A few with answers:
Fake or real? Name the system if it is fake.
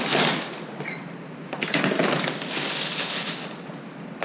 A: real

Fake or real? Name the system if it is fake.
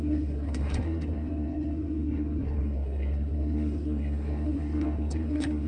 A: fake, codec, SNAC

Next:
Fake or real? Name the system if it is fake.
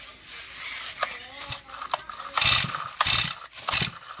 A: real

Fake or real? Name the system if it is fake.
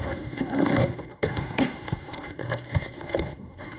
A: fake, codec, SNAC